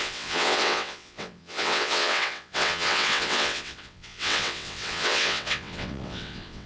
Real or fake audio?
fake